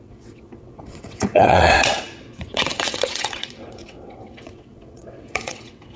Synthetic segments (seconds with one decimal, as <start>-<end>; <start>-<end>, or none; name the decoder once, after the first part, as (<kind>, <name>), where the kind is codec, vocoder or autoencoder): 0.0-6.0 (vocoder, WaveNeXt)